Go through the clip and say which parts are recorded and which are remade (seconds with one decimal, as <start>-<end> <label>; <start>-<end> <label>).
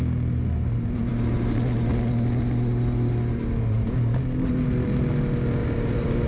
0.0-5.6 recorded; 5.6-6.3 remade